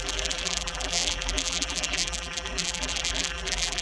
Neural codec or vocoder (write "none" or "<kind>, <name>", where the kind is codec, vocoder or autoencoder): vocoder, BigVGAN v2